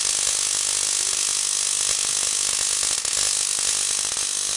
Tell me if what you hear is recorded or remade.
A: recorded